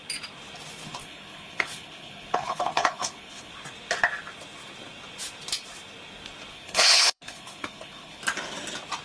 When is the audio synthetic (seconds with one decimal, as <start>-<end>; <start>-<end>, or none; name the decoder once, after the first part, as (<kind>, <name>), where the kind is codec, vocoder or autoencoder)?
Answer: 1.0-3.5 (codec, HILCodec); 6.5-8.2